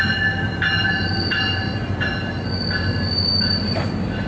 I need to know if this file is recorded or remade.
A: recorded